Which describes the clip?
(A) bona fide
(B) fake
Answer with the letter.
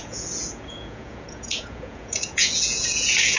B